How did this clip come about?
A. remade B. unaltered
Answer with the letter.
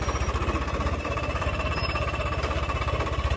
A